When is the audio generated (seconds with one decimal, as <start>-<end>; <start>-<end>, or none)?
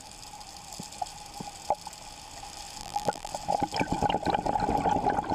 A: 2.8-3.3